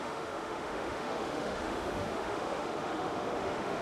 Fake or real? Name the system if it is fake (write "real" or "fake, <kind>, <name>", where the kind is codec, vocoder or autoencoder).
fake, autoencoder, DAC-VAE